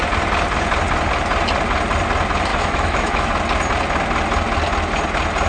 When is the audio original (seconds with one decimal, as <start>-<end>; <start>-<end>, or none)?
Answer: 0.0-2.5; 3.3-5.5